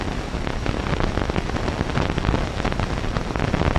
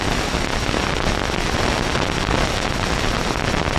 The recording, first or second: second